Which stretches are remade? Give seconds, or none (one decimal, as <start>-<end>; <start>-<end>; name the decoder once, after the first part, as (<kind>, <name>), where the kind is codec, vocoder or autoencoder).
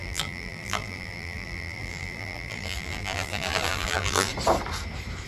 0.0-4.3 (vocoder, BigVGAN v2)